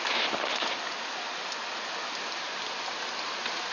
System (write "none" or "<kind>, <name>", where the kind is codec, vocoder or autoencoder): none